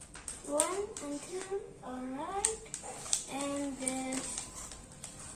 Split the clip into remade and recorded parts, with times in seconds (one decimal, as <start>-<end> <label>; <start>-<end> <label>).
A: 0.0-1.3 recorded; 1.3-2.3 remade; 2.3-5.3 recorded